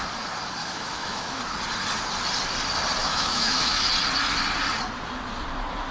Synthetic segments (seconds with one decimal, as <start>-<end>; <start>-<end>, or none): 0.6-1.4; 3.0-3.9